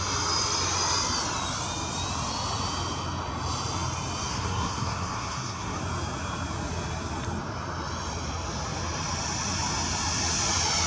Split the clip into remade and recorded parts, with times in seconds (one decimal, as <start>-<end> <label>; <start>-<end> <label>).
0.0-4.3 recorded; 4.3-5.8 remade; 5.8-10.9 recorded